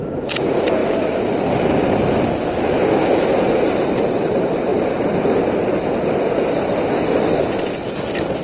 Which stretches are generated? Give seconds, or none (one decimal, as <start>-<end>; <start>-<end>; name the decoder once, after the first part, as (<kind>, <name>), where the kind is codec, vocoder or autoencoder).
0.0-0.8 (vocoder, BigVGAN v2); 3.1-4.7